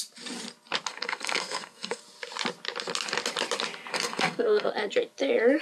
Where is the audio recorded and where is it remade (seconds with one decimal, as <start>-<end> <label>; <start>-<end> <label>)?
0.0-0.9 recorded; 0.9-2.0 remade; 2.0-3.9 recorded; 3.9-4.7 remade; 4.7-5.6 recorded